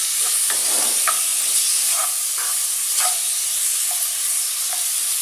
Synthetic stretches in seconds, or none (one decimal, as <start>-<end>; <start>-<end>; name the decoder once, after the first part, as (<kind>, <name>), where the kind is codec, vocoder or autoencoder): 0.0-0.5 (codec, DAC)